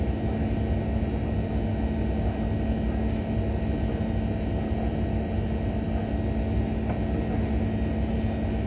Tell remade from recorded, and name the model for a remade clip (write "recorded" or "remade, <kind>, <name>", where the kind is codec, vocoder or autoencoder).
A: recorded